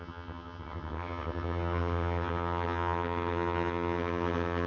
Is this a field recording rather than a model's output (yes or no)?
no